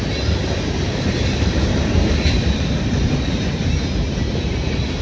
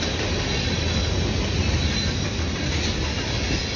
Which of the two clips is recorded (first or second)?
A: second